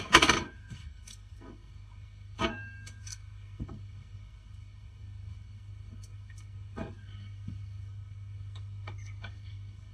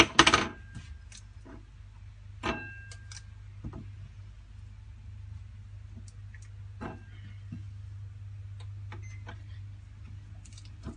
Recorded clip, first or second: second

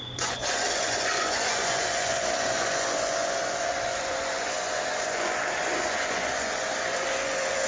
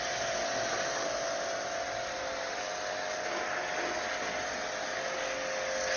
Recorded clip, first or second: second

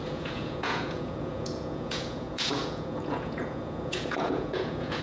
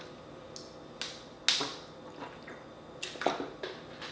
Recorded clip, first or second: second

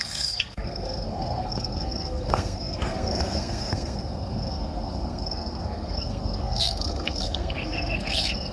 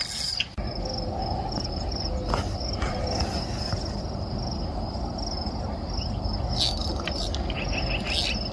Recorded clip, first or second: second